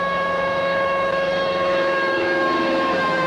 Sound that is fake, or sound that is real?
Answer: fake